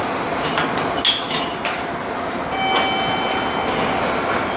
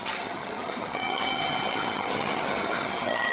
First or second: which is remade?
second